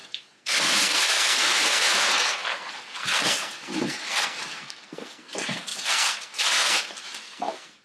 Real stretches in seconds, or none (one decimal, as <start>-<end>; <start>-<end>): none